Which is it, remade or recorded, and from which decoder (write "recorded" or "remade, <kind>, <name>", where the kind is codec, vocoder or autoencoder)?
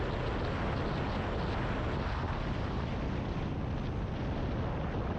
recorded